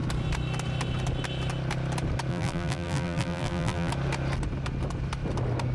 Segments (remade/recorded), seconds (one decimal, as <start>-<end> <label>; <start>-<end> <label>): 0.0-2.3 recorded; 2.3-3.9 remade; 3.9-5.7 recorded